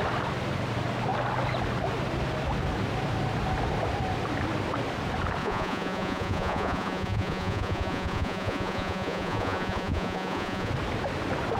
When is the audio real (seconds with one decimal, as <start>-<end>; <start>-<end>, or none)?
0.0-5.4; 10.7-11.6